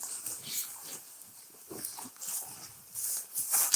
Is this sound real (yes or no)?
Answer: yes